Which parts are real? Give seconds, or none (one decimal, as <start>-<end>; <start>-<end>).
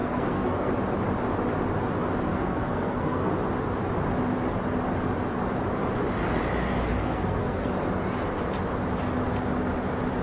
0.7-2.3; 3.3-7.0; 7.7-10.2